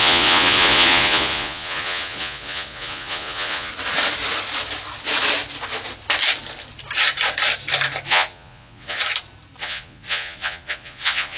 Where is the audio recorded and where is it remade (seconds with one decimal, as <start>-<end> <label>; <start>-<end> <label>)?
0.0-3.7 remade; 3.7-8.1 recorded; 8.1-9.0 remade; 9.0-9.6 recorded; 9.6-11.4 remade